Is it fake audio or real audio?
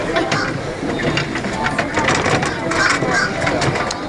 real